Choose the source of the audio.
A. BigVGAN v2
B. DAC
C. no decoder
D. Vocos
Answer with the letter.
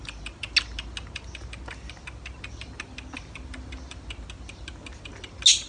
C